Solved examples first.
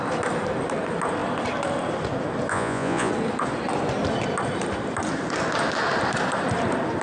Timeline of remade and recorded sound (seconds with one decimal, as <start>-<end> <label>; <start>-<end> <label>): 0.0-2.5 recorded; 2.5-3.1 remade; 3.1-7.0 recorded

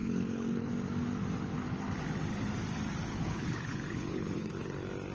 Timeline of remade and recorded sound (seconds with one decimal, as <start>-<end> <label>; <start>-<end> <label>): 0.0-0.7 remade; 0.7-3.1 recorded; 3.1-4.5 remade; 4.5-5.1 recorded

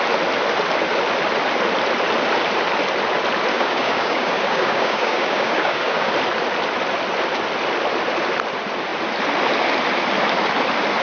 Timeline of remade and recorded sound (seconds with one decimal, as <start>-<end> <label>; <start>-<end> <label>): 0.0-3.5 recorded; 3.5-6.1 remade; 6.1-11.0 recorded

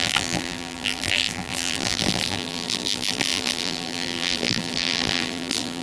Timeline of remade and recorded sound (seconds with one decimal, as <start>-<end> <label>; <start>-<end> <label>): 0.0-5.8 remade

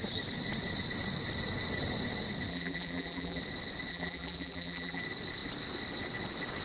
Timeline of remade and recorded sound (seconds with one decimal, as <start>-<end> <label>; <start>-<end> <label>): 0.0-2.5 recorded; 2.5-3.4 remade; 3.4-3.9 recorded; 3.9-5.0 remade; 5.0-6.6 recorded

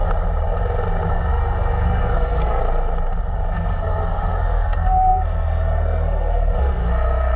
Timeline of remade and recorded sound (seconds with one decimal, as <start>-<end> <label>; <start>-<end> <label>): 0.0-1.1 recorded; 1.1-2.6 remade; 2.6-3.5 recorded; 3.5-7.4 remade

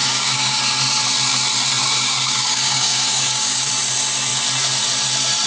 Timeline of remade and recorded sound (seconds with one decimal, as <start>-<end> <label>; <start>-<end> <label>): 0.0-0.6 remade; 0.6-1.8 recorded; 1.8-3.7 remade; 3.7-5.5 recorded

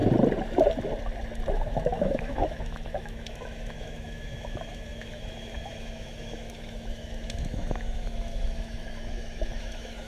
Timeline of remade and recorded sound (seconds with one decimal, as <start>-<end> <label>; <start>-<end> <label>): 0.0-1.5 recorded; 1.5-10.1 remade